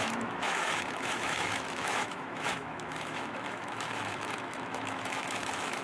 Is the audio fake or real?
fake